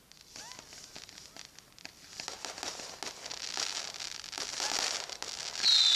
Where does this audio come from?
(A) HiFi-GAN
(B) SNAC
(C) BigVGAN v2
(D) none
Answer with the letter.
D